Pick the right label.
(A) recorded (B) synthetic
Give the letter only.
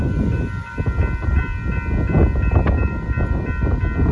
A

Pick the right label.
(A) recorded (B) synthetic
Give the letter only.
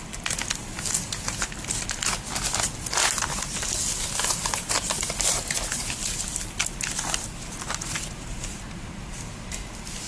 A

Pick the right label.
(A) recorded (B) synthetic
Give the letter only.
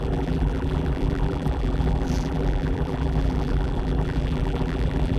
B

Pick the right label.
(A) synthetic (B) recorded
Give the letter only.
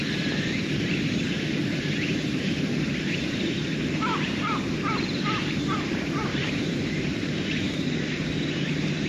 A